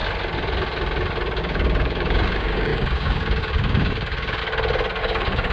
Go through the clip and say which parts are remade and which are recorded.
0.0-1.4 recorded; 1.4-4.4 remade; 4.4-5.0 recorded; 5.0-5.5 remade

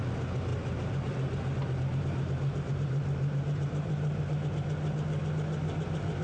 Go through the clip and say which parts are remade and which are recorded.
0.0-0.5 recorded; 0.5-4.2 remade; 4.2-6.2 recorded

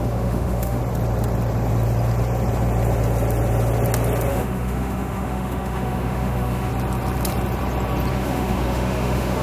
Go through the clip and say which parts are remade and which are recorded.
0.0-0.8 remade; 0.8-4.3 recorded; 4.3-6.7 remade; 6.7-8.1 recorded; 8.1-9.4 remade

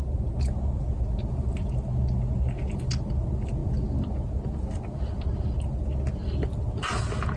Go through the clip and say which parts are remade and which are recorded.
0.0-3.6 recorded; 3.6-5.2 remade; 5.2-7.4 recorded